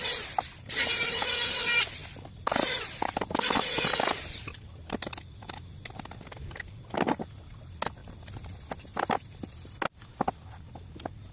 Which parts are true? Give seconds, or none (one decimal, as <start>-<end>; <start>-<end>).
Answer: 0.0-11.3